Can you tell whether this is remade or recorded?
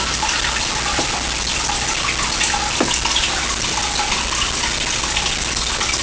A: recorded